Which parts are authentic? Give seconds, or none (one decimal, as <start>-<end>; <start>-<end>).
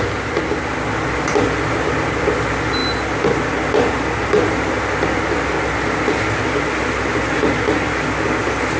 0.0-8.8